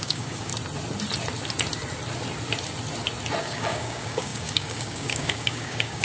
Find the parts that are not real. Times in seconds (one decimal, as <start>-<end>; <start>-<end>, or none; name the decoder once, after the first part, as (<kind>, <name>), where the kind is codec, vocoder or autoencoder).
0.0-0.5 (codec, DAC); 3.4-6.0